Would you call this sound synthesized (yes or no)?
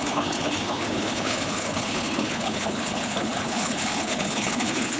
yes